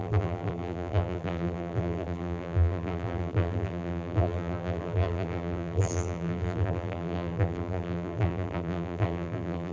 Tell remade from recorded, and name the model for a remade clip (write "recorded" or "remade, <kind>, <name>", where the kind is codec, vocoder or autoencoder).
remade, vocoder, BigVGAN v2